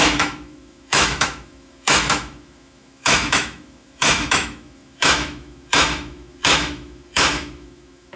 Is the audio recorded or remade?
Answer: remade